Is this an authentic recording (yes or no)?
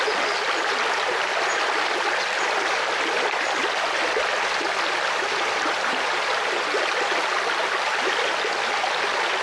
yes